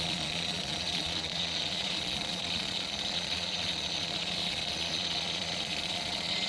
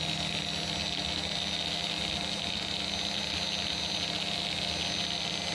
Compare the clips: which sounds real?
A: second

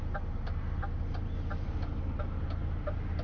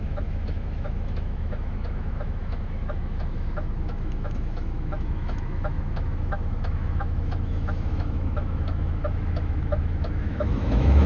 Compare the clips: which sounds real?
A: first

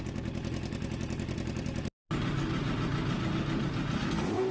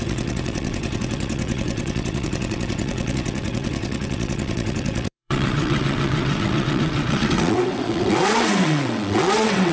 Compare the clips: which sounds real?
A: first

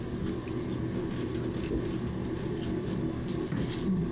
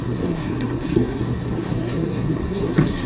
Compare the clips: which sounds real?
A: first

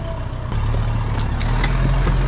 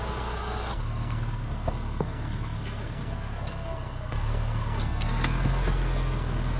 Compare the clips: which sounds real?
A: first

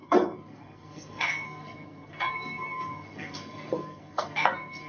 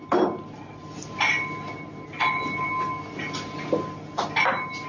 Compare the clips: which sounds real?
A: second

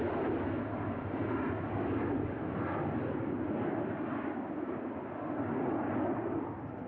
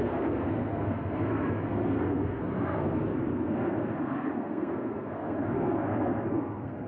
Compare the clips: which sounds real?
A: first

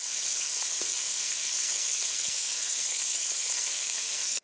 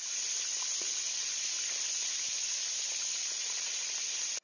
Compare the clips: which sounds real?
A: second